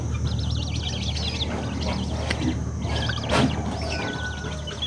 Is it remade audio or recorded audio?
recorded